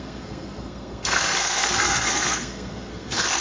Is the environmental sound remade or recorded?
remade